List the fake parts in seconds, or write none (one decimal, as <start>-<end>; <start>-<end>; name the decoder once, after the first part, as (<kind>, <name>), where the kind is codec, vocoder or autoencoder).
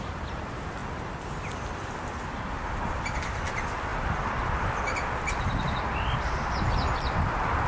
none